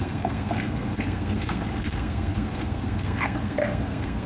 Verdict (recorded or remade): remade